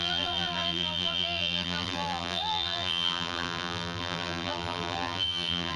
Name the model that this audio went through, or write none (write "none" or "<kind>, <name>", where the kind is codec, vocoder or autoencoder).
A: vocoder, BigVGAN v2